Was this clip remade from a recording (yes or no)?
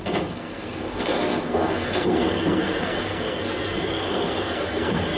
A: yes